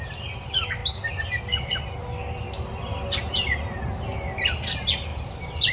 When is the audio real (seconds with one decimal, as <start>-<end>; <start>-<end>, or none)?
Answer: 0.0-5.1